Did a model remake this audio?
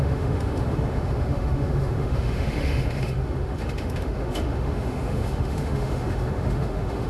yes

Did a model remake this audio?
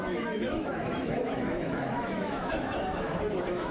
yes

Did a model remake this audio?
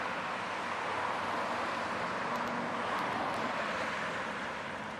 no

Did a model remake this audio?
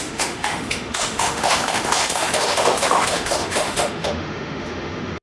yes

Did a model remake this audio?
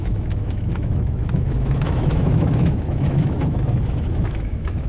yes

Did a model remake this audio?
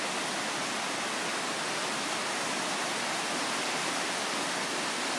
no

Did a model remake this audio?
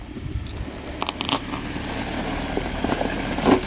no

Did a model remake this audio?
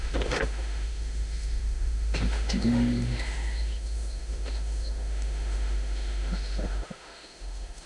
yes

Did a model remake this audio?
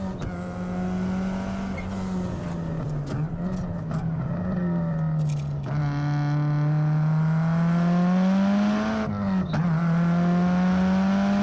no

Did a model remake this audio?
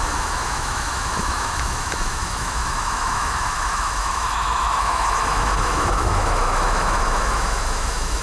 yes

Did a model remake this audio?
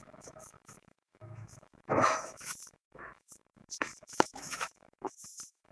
yes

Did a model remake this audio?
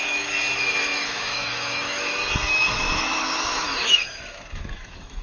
yes